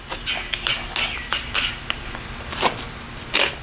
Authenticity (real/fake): real